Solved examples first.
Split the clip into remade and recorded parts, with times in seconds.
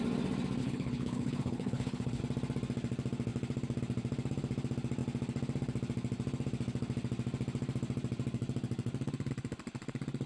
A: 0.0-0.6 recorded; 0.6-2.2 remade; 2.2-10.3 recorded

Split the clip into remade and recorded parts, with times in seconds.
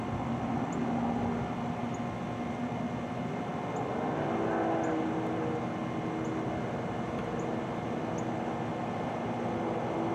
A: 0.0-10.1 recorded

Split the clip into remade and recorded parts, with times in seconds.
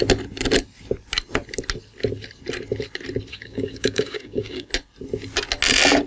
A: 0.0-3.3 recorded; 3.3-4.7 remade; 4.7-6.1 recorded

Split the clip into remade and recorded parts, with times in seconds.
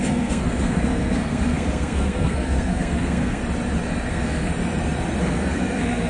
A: 0.0-3.4 remade; 3.4-4.1 recorded; 4.1-4.5 remade; 4.5-5.2 recorded; 5.2-6.1 remade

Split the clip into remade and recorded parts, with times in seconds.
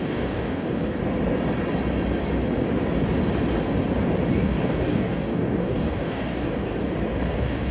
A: 0.0-1.0 remade; 1.0-4.3 recorded; 4.3-6.7 remade; 6.7-7.2 recorded; 7.2-7.7 remade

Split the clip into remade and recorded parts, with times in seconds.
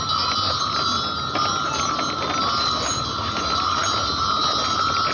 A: 0.0-5.1 recorded